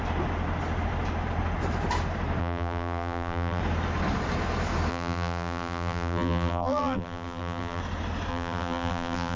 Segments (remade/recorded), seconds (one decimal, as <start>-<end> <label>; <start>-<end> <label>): 0.0-2.4 recorded; 2.4-3.6 remade; 3.6-4.9 recorded; 4.9-7.8 remade; 7.8-8.3 recorded; 8.3-9.4 remade

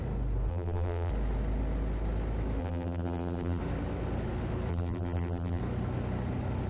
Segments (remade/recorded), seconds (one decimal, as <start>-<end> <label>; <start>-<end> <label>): 0.0-0.5 recorded; 0.5-1.1 remade; 1.1-2.6 recorded; 2.6-3.6 remade; 3.6-4.7 recorded; 4.7-5.6 remade; 5.6-6.7 recorded

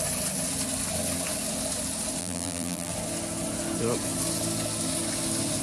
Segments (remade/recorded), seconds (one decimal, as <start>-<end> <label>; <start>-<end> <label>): 0.0-2.2 recorded; 2.2-2.9 remade; 2.9-5.6 recorded

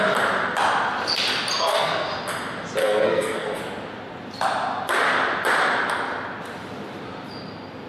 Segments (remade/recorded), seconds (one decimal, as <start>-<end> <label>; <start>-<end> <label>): 0.0-1.6 recorded; 1.6-2.1 remade; 2.1-2.8 recorded; 2.8-3.6 remade; 3.6-7.9 recorded

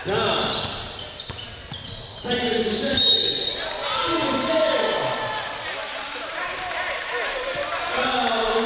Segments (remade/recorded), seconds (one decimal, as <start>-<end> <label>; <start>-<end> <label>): 0.0-8.7 recorded

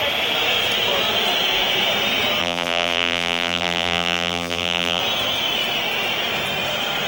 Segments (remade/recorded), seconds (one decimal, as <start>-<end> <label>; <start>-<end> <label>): 0.0-2.4 recorded; 2.4-5.0 remade; 5.0-7.1 recorded

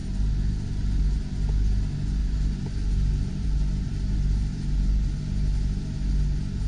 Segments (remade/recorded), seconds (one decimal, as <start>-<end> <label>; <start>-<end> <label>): 0.0-1.2 remade; 1.2-2.2 recorded; 2.2-6.1 remade; 6.1-6.7 recorded